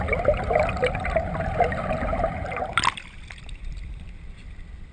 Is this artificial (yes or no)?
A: no